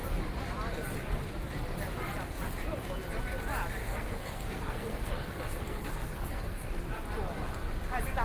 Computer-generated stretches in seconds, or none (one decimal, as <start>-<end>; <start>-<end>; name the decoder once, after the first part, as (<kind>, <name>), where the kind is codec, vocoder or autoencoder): 3.8-6.8 (codec, SNAC)